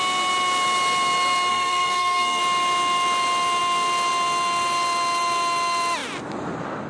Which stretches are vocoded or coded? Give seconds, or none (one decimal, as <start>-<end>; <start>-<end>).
1.5-2.4